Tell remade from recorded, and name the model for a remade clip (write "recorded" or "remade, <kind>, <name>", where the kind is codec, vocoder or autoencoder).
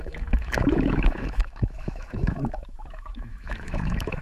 remade, autoencoder, DAC-VAE